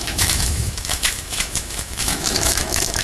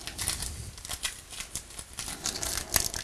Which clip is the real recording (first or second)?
second